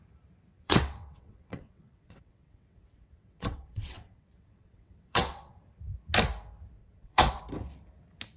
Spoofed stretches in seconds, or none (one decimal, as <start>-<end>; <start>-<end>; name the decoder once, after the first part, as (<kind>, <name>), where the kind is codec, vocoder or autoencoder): 0.5-5.5 (vocoder, WaveNeXt); 6.8-7.4